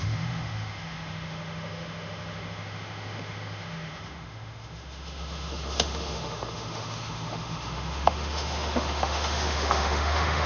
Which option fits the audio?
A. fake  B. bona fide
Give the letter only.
A